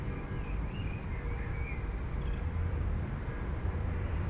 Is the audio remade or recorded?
remade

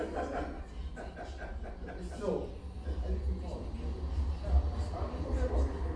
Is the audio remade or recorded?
recorded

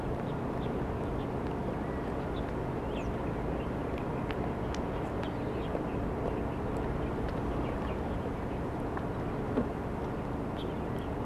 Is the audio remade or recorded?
recorded